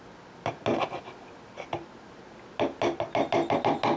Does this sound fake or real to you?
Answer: real